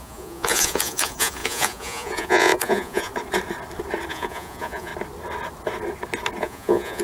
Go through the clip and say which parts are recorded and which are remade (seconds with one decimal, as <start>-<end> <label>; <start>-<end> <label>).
0.0-3.1 remade; 3.1-4.1 recorded; 4.1-4.9 remade; 4.9-6.4 recorded; 6.4-7.0 remade